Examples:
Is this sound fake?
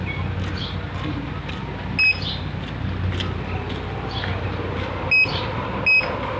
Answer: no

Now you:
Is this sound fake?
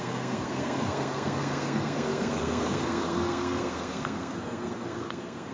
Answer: yes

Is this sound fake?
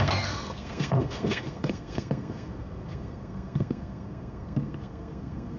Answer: yes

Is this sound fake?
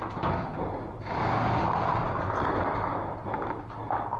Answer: no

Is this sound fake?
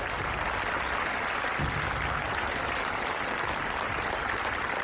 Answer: no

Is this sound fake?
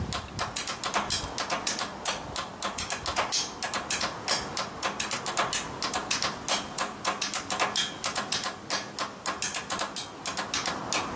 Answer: no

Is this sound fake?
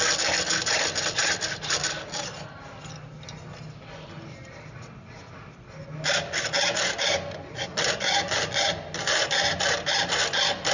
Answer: no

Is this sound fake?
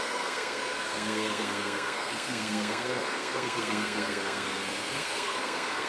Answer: yes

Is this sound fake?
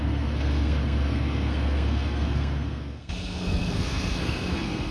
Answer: yes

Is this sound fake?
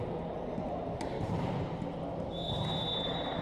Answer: no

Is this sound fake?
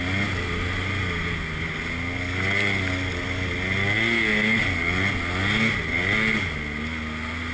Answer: no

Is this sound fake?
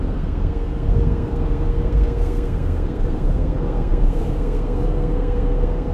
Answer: yes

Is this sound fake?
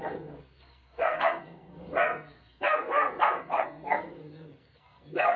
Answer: yes